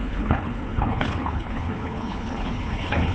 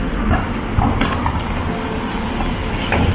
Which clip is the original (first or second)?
second